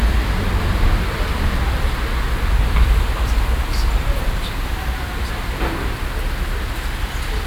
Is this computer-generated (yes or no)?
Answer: no